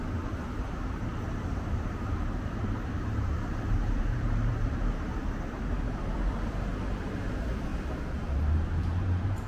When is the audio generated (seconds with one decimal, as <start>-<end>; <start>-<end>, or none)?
1.1-4.7; 7.7-9.5